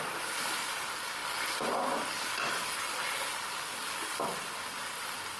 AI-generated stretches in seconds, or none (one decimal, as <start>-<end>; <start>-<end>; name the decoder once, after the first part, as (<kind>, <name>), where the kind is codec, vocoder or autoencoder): none